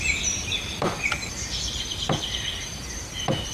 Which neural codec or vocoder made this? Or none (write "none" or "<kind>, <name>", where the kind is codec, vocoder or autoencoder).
vocoder, BigVGAN v2